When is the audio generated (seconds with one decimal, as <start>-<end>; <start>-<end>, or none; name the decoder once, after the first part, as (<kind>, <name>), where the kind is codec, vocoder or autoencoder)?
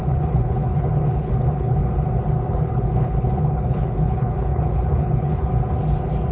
0.0-1.8 (codec, HILCodec); 2.5-5.5